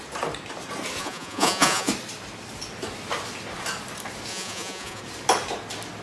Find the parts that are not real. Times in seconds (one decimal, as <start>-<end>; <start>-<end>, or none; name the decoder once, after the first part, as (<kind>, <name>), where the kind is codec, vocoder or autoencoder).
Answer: 1.0-1.9 (vocoder, Vocos); 4.3-5.0